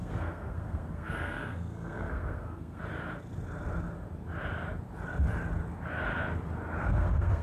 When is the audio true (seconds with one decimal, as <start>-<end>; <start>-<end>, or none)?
2.8-6.8